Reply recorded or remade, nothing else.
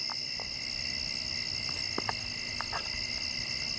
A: recorded